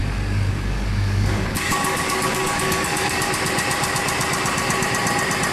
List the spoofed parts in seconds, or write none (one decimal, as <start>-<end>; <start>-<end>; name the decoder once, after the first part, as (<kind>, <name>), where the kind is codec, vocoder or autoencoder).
0.0-3.3 (codec, DAC)